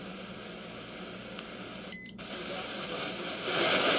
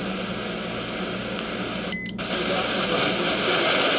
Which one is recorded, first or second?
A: second